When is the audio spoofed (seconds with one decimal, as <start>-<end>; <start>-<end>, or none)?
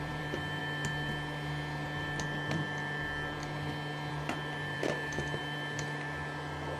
0.0-0.6; 4.1-6.8